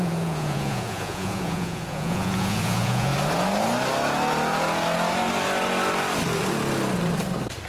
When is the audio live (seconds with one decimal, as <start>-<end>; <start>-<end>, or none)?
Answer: 3.1-7.7